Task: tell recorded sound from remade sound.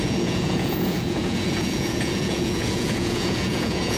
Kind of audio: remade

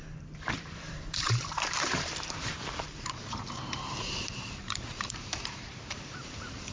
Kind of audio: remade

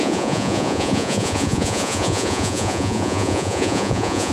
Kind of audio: remade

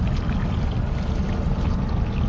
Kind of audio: recorded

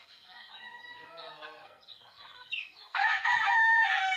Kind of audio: remade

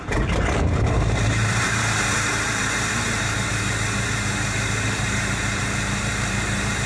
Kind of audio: remade